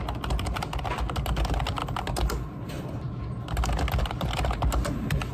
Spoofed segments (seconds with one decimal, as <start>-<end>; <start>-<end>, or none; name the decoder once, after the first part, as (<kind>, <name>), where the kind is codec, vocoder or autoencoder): none